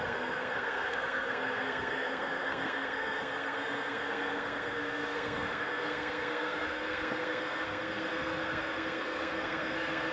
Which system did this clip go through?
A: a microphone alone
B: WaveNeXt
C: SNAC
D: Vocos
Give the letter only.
C